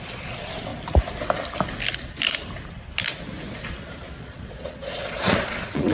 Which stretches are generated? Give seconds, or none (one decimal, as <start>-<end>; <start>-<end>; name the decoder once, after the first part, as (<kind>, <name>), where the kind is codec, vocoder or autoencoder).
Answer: 0.0-0.7 (vocoder, Vocos); 4.2-5.9